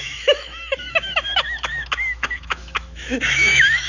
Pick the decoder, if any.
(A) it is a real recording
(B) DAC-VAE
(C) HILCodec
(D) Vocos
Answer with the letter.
B